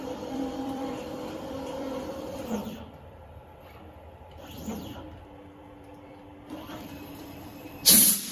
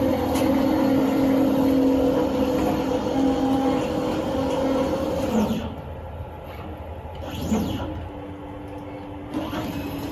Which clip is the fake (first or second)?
first